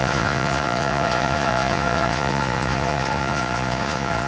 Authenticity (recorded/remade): remade